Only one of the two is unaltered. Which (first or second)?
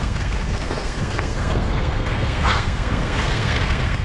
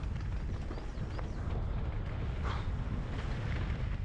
second